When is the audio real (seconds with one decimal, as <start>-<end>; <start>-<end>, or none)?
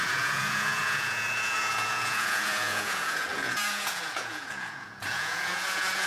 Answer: none